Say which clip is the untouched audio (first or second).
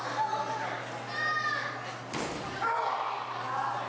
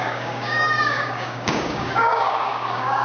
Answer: first